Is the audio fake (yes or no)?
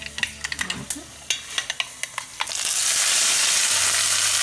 no